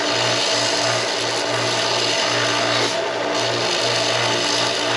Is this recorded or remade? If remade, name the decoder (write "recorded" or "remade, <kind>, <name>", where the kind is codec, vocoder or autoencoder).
recorded